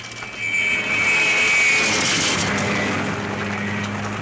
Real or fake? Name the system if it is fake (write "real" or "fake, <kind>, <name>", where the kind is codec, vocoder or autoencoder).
real